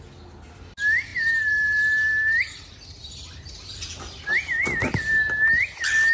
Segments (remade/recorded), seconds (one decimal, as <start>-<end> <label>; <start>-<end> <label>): 0.0-6.1 recorded